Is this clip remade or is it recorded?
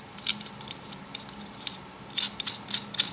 recorded